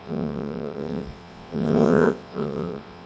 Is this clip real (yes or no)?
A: no